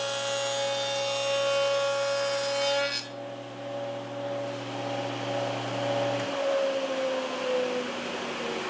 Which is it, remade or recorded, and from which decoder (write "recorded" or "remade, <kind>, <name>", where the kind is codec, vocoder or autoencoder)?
recorded